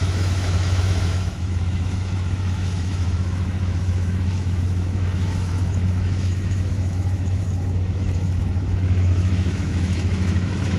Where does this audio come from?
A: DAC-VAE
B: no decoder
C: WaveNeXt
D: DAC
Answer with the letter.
A